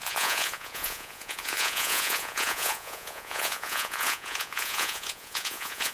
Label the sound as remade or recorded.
remade